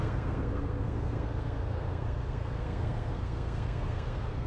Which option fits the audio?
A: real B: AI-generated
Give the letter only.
B